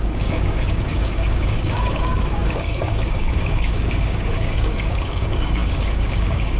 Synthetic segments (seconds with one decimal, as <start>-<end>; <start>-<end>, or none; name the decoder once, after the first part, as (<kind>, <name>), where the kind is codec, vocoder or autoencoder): 0.0-6.6 (codec, DAC)